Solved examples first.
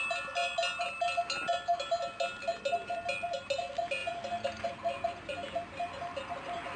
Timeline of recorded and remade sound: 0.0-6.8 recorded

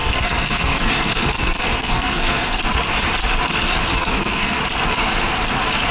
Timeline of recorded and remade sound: 0.0-2.6 remade; 2.6-3.9 recorded; 3.9-4.6 remade; 4.6-5.9 recorded

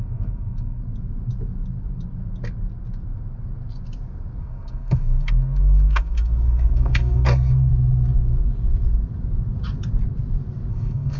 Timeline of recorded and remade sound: 0.0-0.8 remade; 0.8-4.4 recorded; 4.4-7.7 remade; 7.7-10.7 recorded; 10.7-11.2 remade

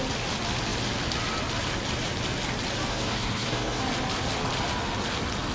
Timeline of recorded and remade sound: 0.0-2.9 recorded; 2.9-3.8 remade; 3.8-5.5 recorded

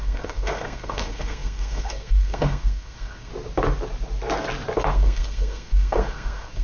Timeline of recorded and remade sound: 0.0-3.3 remade; 3.3-4.9 recorded; 4.9-6.6 remade

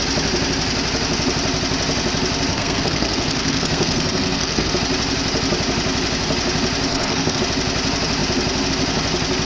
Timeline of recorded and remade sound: 0.0-2.5 recorded; 2.5-4.7 remade; 4.7-6.9 recorded; 6.9-7.4 remade; 7.4-9.4 recorded

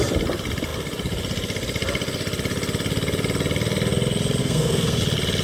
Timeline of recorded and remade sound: 0.0-4.4 recorded; 4.4-5.0 remade; 5.0-5.4 recorded

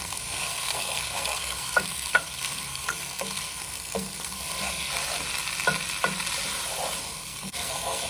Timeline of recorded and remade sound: 0.0-4.9 remade; 4.9-7.0 recorded; 7.0-8.1 remade